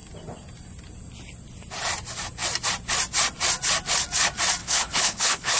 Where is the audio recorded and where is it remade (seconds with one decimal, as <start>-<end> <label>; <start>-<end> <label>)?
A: 0.0-4.6 recorded; 4.6-5.6 remade